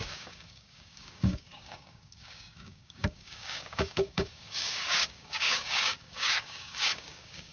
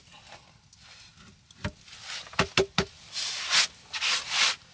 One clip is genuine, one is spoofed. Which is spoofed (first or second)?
first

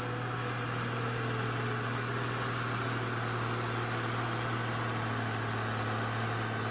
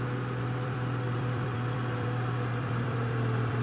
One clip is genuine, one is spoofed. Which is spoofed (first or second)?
second